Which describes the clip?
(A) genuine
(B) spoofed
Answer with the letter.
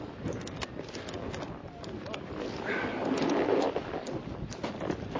A